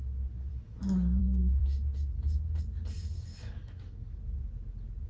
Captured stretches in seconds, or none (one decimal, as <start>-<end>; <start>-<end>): 0.0-0.5; 1.2-1.6; 2.6-3.0; 4.2-5.1